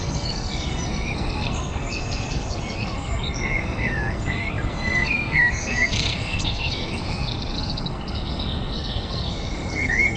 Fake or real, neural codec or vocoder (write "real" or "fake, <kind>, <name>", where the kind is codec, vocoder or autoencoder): fake, codec, SNAC